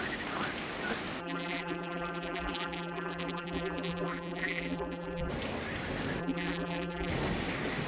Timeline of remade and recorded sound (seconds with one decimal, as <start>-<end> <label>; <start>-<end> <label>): 0.0-1.2 recorded; 1.2-5.3 remade; 5.3-6.2 recorded; 6.2-7.1 remade; 7.1-7.9 recorded